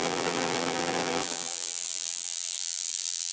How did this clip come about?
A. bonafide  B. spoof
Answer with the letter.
B